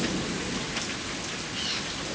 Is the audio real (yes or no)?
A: yes